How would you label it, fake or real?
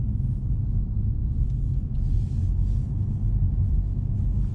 real